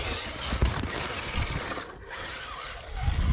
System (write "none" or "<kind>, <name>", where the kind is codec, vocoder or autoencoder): none